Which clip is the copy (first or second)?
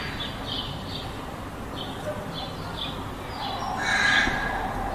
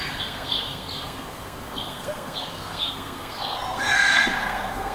second